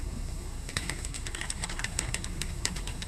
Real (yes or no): no